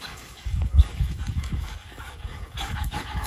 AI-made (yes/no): yes